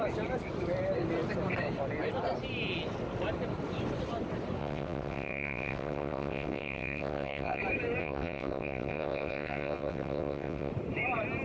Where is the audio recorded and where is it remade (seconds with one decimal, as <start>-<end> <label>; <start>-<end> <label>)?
0.0-4.6 recorded; 4.6-7.6 remade; 7.6-8.0 recorded; 8.0-10.7 remade; 10.7-11.4 recorded